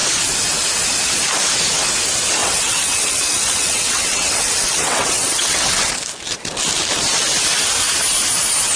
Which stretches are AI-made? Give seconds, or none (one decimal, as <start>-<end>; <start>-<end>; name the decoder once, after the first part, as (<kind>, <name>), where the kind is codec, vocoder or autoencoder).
2.4-5.9 (vocoder, WaveNeXt)